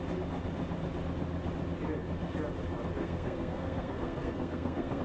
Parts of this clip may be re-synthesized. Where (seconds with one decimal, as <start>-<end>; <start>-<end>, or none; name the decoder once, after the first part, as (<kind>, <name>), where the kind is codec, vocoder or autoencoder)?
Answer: 3.0-5.0 (codec, SNAC)